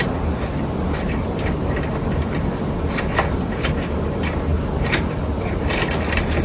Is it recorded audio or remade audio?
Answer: recorded